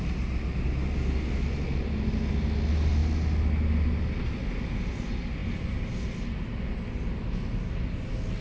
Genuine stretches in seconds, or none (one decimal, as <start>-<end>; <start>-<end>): 0.0-8.4